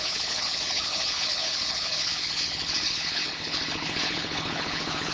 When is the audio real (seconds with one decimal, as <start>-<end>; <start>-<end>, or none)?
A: none